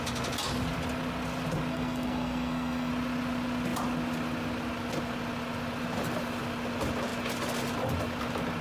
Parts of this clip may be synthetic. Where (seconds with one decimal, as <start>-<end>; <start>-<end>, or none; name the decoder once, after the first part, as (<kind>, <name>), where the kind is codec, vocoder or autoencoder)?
1.7-2.9 (codec, SNAC)